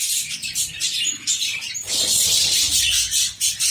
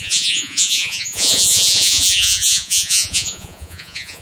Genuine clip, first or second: first